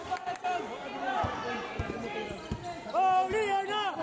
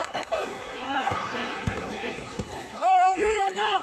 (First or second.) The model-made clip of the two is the second